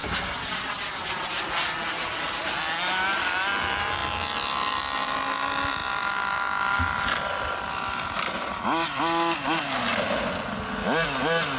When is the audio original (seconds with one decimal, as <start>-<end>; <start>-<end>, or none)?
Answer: 0.0-11.6